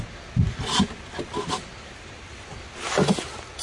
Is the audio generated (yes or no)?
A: no